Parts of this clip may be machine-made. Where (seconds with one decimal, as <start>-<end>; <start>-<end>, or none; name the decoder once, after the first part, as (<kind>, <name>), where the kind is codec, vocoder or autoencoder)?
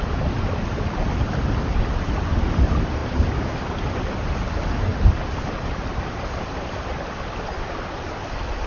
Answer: 3.0-3.7 (vocoder, BigVGAN v2); 4.9-6.6